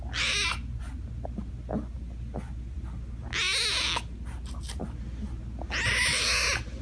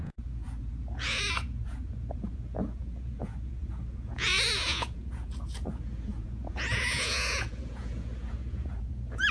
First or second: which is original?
first